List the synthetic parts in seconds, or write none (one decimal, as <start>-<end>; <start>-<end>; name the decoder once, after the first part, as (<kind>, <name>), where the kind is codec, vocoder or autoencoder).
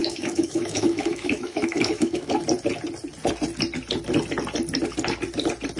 0.0-2.4 (autoencoder, DAC-VAE)